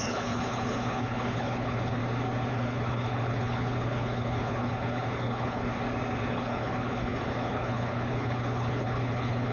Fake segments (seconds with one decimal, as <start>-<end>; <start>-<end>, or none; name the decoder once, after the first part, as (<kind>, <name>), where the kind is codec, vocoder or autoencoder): 0.0-2.0 (codec, HILCodec); 2.5-5.7; 6.3-9.5